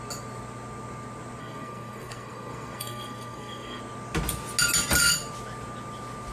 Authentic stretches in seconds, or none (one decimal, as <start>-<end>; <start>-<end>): 0.0-1.4; 3.8-6.3